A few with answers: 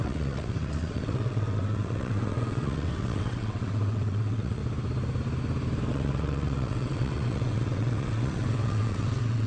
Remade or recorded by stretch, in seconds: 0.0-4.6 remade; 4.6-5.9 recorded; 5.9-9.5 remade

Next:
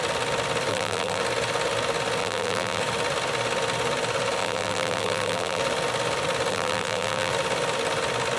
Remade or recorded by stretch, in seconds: 0.0-0.7 recorded; 0.7-1.2 remade; 1.2-2.2 recorded; 2.2-2.8 remade; 2.8-4.4 recorded; 4.4-5.6 remade; 5.6-6.5 recorded; 6.5-7.3 remade; 7.3-8.4 recorded

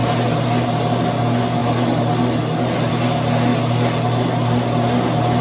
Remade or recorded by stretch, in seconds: 0.0-5.4 recorded

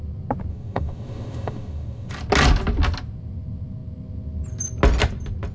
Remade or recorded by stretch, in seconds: 0.0-0.5 recorded; 0.5-2.1 remade; 2.1-5.5 recorded

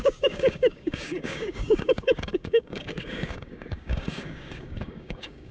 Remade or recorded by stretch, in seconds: 0.0-5.5 remade

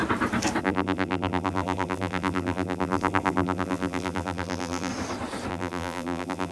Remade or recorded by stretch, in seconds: 0.0-0.6 recorded; 0.6-4.9 remade; 4.9-5.5 recorded; 5.5-6.5 remade